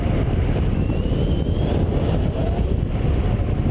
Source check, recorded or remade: recorded